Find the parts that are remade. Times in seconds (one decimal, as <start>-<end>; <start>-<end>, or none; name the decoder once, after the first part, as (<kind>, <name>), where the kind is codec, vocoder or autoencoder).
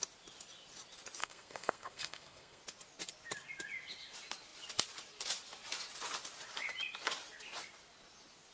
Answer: 1.2-2.6 (codec, SNAC)